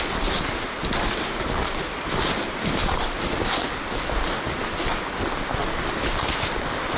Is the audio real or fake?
real